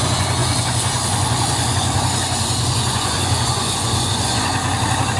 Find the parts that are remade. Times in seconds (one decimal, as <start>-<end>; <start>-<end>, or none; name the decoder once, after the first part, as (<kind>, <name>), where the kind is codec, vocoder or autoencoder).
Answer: 0.0-4.6 (vocoder, Vocos)